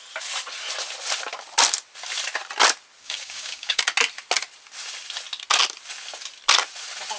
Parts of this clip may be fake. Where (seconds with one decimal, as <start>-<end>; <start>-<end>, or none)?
3.0-3.8